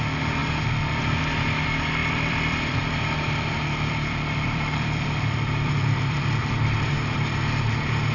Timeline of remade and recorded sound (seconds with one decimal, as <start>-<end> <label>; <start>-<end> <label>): 0.0-2.0 recorded; 2.0-6.9 remade; 6.9-8.1 recorded